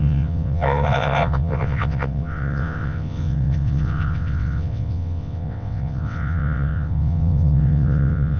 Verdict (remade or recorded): remade